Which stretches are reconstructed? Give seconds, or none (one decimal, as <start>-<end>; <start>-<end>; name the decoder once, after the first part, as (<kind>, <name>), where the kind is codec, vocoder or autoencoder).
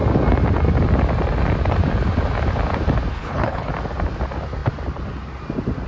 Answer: 3.1-3.7 (codec, HILCodec)